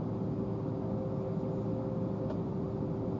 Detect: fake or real real